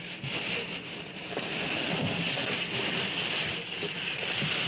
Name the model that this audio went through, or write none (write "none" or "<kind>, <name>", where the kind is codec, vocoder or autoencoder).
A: none